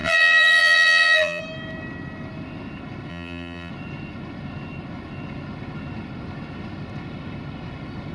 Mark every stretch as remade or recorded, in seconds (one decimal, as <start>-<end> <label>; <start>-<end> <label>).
0.0-1.4 remade; 1.4-3.1 recorded; 3.1-3.7 remade; 3.7-8.1 recorded

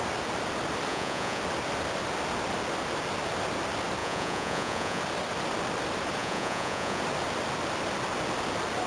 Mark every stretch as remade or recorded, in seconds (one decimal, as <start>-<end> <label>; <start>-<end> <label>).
0.0-0.9 recorded; 0.9-1.4 remade; 1.4-4.0 recorded; 4.0-5.0 remade; 5.0-6.2 recorded; 6.2-7.0 remade; 7.0-8.9 recorded

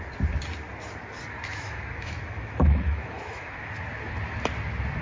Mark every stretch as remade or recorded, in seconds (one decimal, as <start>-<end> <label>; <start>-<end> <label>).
0.0-1.5 recorded; 1.5-3.7 remade; 3.7-5.0 recorded